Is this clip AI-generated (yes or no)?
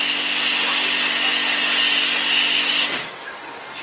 no